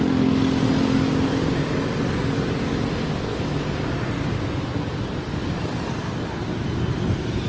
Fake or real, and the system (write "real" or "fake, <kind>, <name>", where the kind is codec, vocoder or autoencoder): real